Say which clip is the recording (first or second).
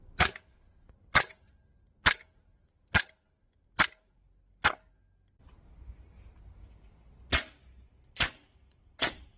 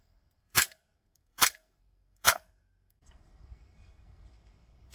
first